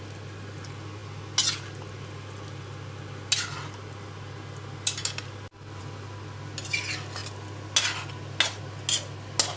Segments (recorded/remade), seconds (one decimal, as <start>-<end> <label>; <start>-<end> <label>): 0.0-9.6 recorded